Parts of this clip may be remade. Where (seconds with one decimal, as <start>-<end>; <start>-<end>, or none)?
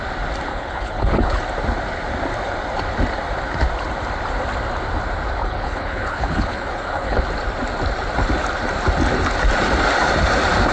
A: 0.5-1.4; 5.4-7.2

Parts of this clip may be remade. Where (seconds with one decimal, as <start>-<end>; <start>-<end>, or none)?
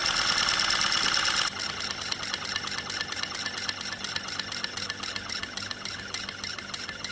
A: none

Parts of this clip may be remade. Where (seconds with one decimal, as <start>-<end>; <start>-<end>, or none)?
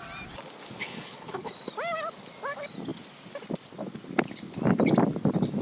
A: 0.8-1.5